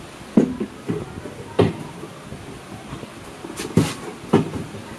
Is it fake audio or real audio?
real